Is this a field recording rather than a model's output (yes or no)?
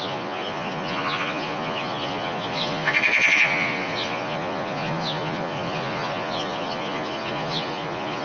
no